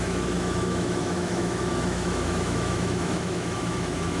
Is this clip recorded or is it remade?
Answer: remade